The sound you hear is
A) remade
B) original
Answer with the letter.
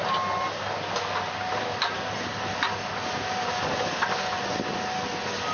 B